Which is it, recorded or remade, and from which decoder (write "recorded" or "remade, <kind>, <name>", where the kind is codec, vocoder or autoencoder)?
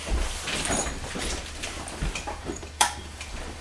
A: remade, vocoder, BigVGAN v2